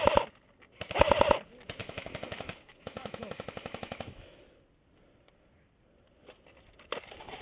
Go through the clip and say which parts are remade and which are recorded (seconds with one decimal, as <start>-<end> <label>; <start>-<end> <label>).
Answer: 0.0-1.8 recorded; 1.8-4.4 remade; 4.4-7.4 recorded